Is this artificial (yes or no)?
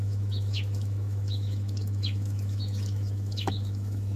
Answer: yes